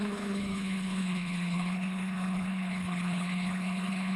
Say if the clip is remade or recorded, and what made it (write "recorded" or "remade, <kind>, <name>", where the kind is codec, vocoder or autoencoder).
remade, codec, HILCodec